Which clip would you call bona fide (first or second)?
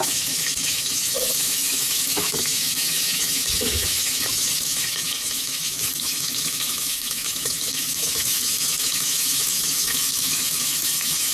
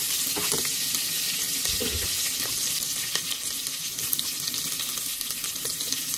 second